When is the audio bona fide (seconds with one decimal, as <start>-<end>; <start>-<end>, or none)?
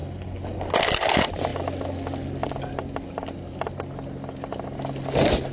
0.0-5.5